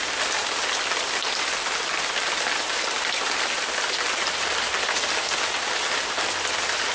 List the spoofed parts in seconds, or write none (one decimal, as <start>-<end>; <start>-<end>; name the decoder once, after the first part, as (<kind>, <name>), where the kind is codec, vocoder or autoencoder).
none